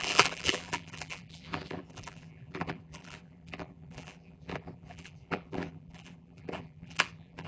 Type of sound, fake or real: fake